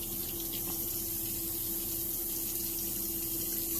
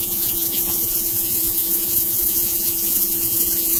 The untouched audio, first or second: first